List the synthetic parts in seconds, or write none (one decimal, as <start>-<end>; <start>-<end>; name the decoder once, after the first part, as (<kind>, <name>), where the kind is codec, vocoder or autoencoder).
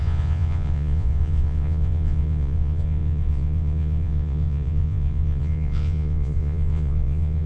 0.0-7.5 (vocoder, Vocos)